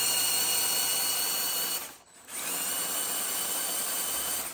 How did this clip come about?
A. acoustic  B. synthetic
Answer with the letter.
A